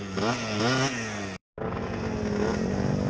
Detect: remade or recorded recorded